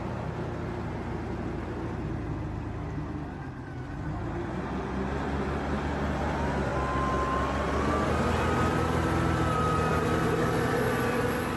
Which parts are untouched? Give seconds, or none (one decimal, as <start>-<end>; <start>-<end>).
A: 0.0-11.6